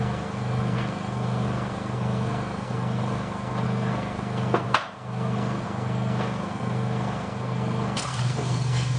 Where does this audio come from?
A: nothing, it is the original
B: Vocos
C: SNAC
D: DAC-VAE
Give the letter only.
C